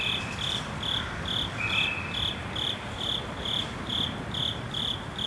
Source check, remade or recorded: recorded